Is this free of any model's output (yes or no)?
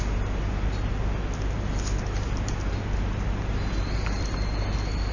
yes